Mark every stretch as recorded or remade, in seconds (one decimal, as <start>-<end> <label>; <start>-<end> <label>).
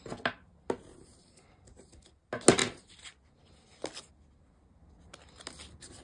0.0-6.0 recorded